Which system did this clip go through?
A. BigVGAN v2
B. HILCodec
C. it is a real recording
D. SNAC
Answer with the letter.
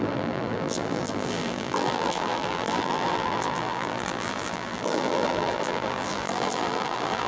A